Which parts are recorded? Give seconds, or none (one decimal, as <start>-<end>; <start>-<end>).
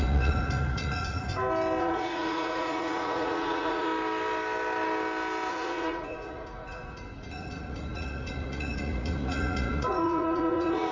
1.3-1.8; 3.9-5.5